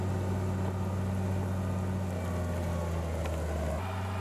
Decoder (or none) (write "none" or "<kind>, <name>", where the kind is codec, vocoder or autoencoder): none